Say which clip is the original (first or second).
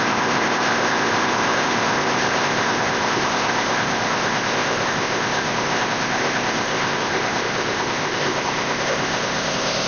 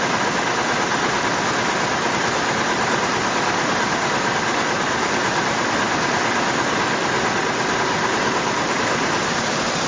second